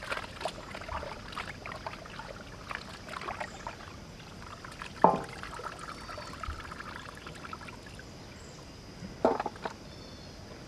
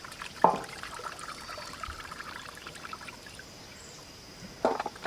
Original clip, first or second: first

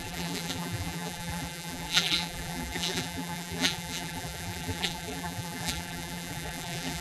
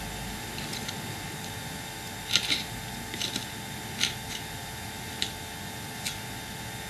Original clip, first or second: second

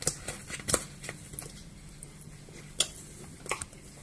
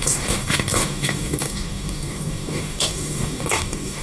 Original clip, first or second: first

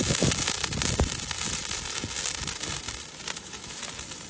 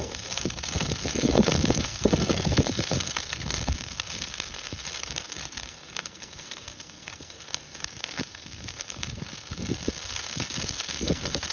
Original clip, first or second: first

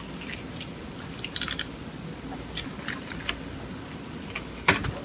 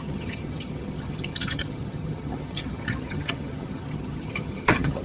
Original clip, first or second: first